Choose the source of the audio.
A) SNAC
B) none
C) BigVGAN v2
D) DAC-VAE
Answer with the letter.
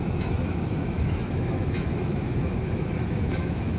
D